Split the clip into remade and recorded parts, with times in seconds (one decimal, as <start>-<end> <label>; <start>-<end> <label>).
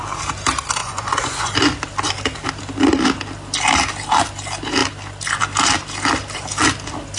0.0-0.8 recorded; 0.8-1.5 remade; 1.5-7.2 recorded